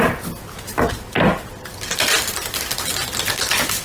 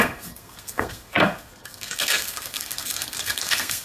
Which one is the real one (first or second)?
first